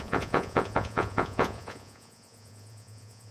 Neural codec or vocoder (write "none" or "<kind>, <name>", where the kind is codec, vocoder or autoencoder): vocoder, Vocos